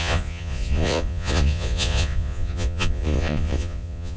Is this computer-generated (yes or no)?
yes